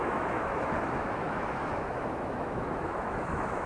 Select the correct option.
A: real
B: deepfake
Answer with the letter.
B